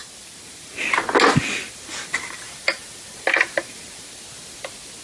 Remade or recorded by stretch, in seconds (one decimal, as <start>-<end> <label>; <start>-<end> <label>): 0.0-5.0 recorded

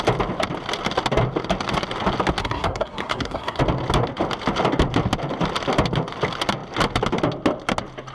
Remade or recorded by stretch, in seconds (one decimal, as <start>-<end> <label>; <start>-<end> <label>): 0.0-2.4 recorded; 2.4-3.6 remade; 3.6-8.1 recorded

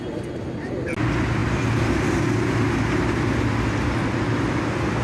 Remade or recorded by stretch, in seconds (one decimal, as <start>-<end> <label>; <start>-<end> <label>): 0.0-5.0 recorded

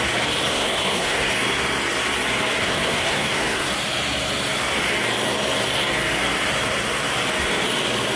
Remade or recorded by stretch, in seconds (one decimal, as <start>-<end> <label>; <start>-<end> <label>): 0.0-0.5 recorded; 0.5-1.3 remade; 1.3-2.6 recorded; 2.6-3.7 remade; 3.7-8.2 recorded

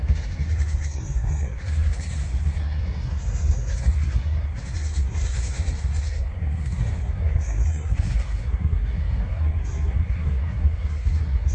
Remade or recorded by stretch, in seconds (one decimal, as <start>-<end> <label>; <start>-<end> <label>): 0.0-11.5 remade

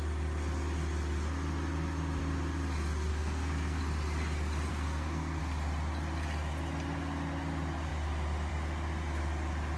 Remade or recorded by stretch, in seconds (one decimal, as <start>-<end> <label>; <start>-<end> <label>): 0.0-3.1 recorded; 3.1-3.8 remade; 3.8-4.7 recorded; 4.7-5.4 remade; 5.4-9.8 recorded